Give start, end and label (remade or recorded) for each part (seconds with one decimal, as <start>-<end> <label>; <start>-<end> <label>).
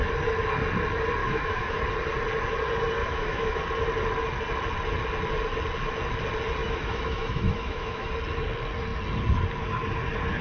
0.0-1.2 recorded; 1.2-1.8 remade; 1.8-3.0 recorded; 3.0-3.6 remade; 3.6-6.6 recorded; 6.6-8.1 remade; 8.1-10.4 recorded